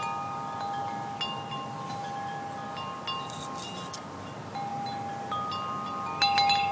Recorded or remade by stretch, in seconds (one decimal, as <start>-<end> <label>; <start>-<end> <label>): 0.0-4.7 recorded; 4.7-5.5 remade; 5.5-6.7 recorded